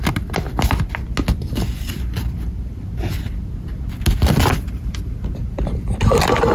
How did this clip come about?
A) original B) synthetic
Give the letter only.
A